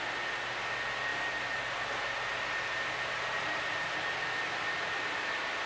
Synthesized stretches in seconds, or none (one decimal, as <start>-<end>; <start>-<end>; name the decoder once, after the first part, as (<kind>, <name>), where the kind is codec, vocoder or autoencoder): none